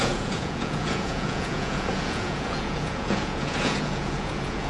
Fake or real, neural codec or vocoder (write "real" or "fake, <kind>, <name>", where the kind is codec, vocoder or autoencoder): fake, vocoder, Vocos